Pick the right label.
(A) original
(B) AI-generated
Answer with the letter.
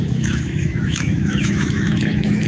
B